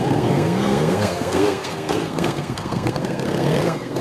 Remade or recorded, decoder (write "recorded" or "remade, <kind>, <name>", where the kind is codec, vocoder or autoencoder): remade, codec, SNAC